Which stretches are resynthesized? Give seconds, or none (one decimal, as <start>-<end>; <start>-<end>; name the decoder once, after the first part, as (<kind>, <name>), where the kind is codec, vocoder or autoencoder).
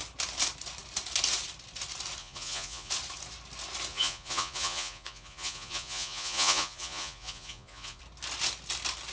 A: 2.2-2.9 (vocoder, Vocos); 3.9-8.0